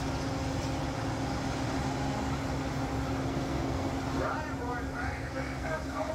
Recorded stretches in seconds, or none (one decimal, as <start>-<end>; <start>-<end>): 0.0-3.3; 3.9-4.9